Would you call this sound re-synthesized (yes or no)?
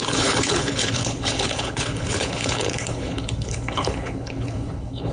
yes